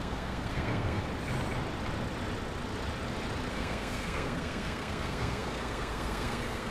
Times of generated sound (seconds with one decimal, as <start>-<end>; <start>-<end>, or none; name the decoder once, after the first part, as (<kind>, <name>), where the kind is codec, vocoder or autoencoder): 0.0-1.0 (codec, SNAC); 3.5-6.7